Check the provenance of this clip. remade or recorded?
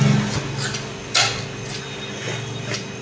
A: recorded